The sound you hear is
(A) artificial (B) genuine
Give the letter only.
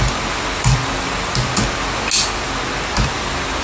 B